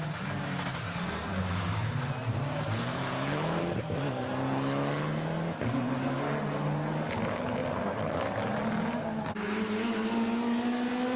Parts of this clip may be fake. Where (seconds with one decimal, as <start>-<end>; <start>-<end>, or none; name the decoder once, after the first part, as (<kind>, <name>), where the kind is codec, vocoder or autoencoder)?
0.7-3.6 (vocoder, BigVGAN v2)